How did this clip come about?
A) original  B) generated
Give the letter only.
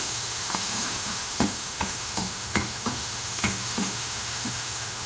B